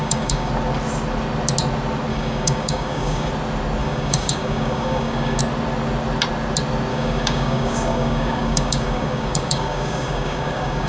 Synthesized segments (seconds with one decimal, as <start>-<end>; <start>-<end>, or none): 0.0-0.5; 2.1-3.3; 3.8-5.4; 6.9-10.9